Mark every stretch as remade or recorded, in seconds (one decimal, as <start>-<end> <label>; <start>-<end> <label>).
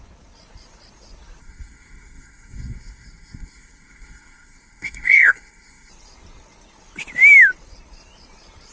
0.0-1.4 recorded; 1.4-5.9 remade; 5.9-8.7 recorded